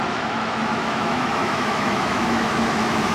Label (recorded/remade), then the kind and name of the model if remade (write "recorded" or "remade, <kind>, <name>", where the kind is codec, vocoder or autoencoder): remade, autoencoder, DAC-VAE